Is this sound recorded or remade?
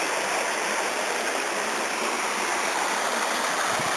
recorded